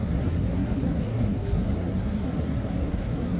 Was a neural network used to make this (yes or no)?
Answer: yes